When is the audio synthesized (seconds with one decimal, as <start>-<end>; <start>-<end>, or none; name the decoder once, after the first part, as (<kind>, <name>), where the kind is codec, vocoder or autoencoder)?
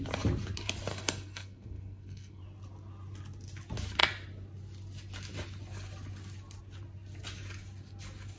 0.9-2.4 (codec, SNAC)